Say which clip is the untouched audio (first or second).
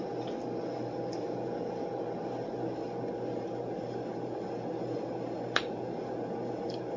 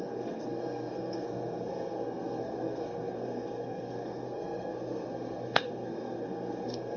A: first